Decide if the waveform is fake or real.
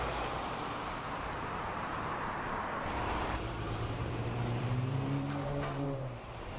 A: fake